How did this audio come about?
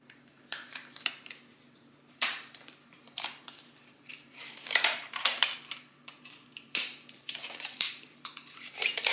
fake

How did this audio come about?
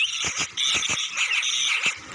real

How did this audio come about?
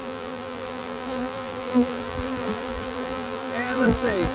fake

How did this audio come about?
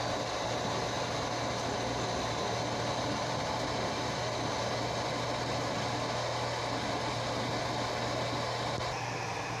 real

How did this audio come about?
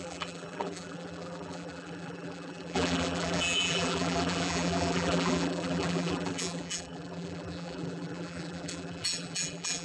fake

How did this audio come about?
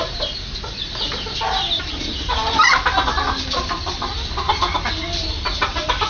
fake